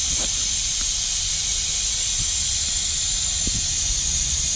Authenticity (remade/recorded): recorded